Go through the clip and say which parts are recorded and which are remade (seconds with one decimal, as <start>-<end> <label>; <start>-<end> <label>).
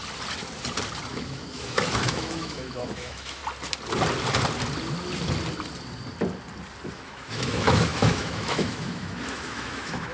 0.0-1.1 recorded; 1.1-3.4 remade; 3.4-6.9 recorded; 6.9-10.1 remade